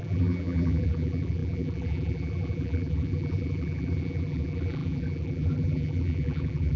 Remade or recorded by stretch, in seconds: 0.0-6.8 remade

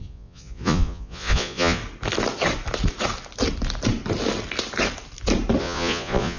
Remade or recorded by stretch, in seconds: 0.0-1.8 remade; 1.8-5.6 recorded; 5.6-6.4 remade

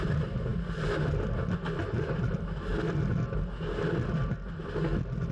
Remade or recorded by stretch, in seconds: 0.0-5.3 recorded

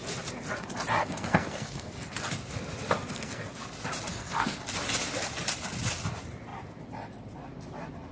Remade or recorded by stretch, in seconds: 0.0-1.0 recorded; 1.0-2.3 remade; 2.3-3.1 recorded; 3.1-3.6 remade; 3.6-4.1 recorded; 4.1-4.6 remade; 4.6-8.1 recorded

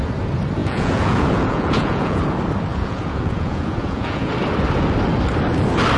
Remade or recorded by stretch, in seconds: 0.0-0.6 recorded; 0.6-2.2 remade; 2.2-2.7 recorded; 2.7-4.3 remade; 4.3-6.0 recorded